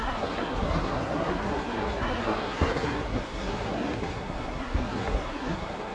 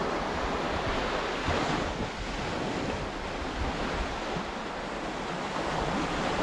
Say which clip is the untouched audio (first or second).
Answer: second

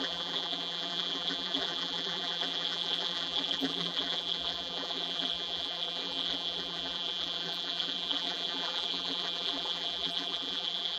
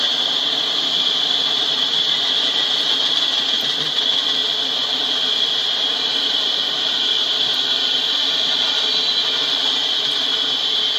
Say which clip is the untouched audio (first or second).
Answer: second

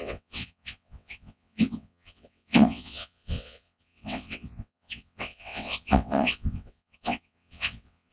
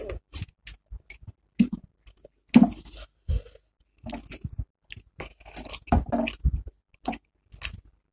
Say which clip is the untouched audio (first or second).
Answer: second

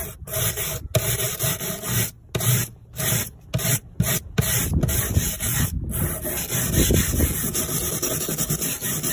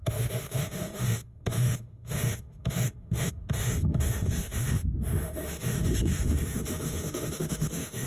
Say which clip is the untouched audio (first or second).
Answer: first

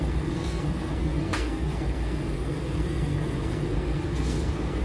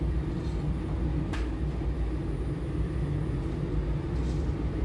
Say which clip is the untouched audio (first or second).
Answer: second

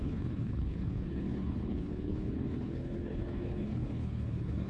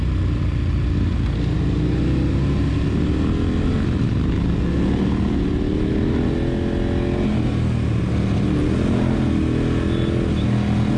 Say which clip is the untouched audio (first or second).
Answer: second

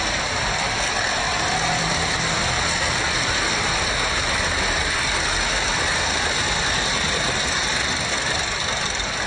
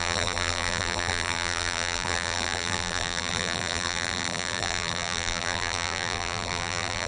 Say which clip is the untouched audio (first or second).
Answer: first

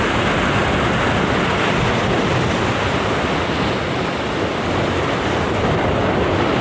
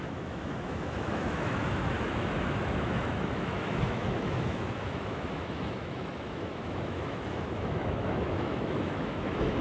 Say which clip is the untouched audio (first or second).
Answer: first